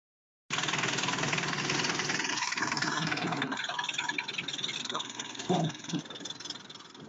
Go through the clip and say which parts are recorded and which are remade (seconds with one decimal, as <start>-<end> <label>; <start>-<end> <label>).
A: 0.0-2.3 recorded; 2.3-3.6 remade; 3.6-4.8 recorded; 4.8-6.0 remade; 6.0-7.1 recorded